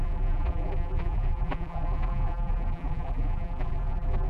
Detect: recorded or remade remade